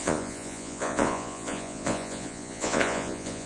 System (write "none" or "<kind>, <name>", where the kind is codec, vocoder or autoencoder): vocoder, Vocos